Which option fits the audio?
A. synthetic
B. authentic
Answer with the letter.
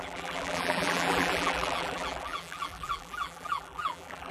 A